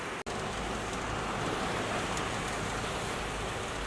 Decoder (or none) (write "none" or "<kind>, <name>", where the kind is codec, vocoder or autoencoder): none